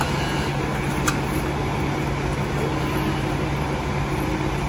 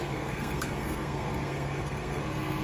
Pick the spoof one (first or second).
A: second